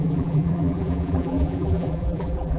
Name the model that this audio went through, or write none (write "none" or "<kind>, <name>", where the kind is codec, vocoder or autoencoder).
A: vocoder, BigVGAN v2